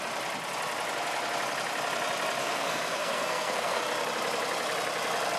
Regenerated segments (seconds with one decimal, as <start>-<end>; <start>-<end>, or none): 2.4-3.8